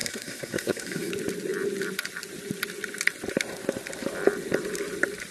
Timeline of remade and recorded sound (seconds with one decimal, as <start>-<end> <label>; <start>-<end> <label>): 0.0-1.1 remade; 1.1-5.3 recorded